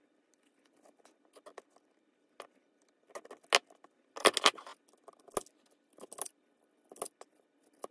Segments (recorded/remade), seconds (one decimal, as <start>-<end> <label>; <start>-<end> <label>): 0.0-7.9 recorded